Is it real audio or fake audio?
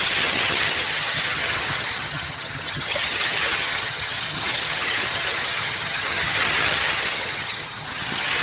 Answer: fake